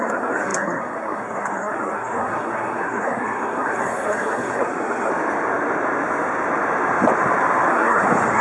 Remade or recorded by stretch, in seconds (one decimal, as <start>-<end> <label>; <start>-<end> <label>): 0.0-5.1 remade; 5.1-7.7 recorded; 7.7-8.4 remade